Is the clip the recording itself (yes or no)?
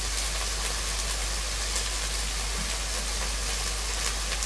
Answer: yes